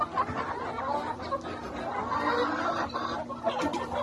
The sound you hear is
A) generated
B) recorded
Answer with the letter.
B